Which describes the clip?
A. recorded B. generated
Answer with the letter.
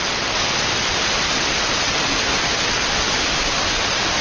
A